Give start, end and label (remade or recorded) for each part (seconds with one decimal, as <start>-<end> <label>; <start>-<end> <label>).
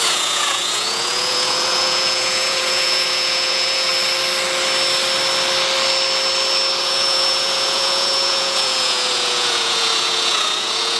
0.0-3.9 remade; 3.9-6.8 recorded; 6.8-11.0 remade